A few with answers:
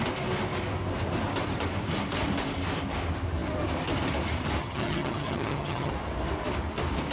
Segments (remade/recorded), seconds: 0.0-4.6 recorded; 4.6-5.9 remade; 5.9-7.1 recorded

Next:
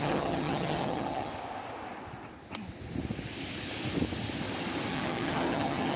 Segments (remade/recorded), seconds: 0.0-1.3 remade; 1.3-4.9 recorded; 4.9-6.0 remade

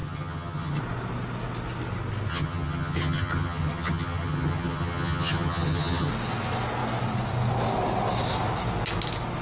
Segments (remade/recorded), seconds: 0.0-0.8 remade; 0.8-2.3 recorded; 2.3-6.1 remade; 6.1-9.4 recorded

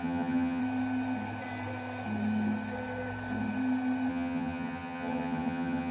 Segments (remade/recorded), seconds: 0.0-0.6 remade; 0.6-4.1 recorded; 4.1-5.9 remade

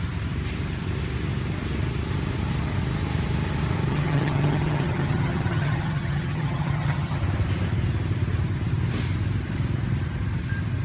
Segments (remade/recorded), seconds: 0.0-3.9 recorded; 3.9-7.2 remade; 7.2-10.8 recorded